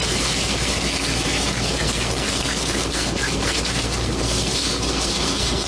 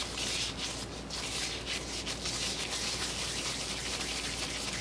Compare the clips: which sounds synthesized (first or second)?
first